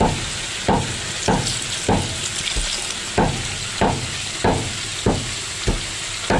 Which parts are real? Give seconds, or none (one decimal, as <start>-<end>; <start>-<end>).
0.0-6.4